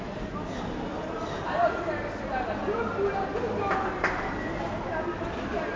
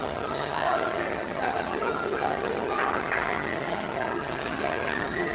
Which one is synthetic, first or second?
second